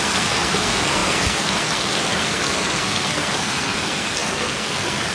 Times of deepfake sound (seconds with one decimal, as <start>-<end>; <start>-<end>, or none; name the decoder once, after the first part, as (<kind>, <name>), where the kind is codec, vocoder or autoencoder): 0.0-5.1 (codec, SNAC)